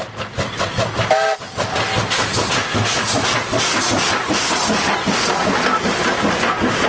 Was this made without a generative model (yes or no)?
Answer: yes